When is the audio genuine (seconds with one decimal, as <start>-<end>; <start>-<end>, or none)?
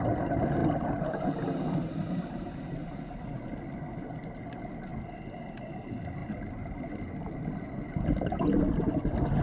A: 0.0-9.4